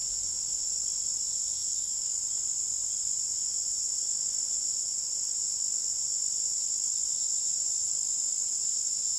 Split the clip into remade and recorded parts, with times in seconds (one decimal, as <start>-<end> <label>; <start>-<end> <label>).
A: 0.0-1.6 recorded; 1.6-2.2 remade; 2.2-9.2 recorded